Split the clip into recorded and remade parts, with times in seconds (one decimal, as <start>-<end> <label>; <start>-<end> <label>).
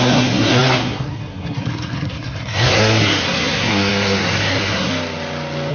0.0-4.9 remade; 4.9-5.7 recorded